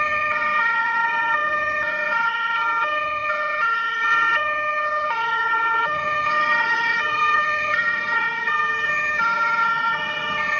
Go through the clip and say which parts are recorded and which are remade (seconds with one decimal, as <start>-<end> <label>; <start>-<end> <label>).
0.0-10.6 remade